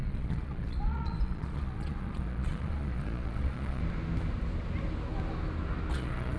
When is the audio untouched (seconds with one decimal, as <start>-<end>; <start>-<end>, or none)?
3.8-5.9